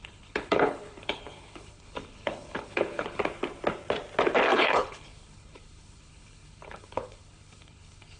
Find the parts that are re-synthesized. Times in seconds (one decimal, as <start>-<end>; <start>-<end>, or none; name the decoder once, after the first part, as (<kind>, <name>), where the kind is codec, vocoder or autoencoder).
0.0-3.2 (codec, HILCodec); 4.5-8.2